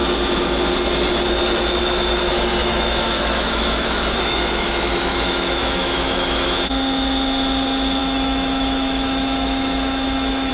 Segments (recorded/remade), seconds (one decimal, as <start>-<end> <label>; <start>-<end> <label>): 0.0-2.6 recorded; 2.6-6.7 remade; 6.7-8.0 recorded; 8.0-10.5 remade